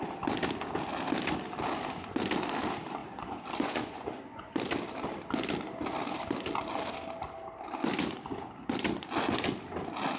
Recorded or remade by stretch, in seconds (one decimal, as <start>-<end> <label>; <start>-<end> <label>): 0.0-3.0 recorded; 3.0-4.5 remade; 4.5-10.2 recorded